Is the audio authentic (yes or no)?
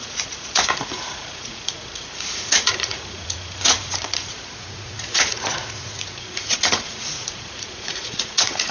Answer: no